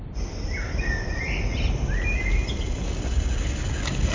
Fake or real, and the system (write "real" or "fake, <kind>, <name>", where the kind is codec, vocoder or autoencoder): real